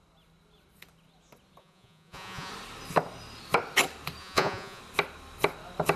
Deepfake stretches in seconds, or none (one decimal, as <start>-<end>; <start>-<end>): 1.6-2.5; 4.2-4.8